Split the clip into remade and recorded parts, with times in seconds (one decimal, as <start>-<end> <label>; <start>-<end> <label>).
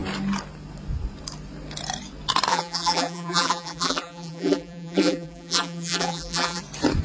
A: 0.0-2.5 recorded; 2.5-6.6 remade; 6.6-7.0 recorded